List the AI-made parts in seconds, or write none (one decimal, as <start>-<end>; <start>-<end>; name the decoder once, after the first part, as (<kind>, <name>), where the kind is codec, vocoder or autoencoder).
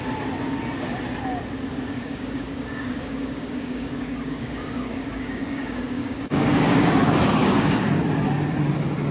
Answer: 1.7-6.9 (codec, DAC); 7.4-8.0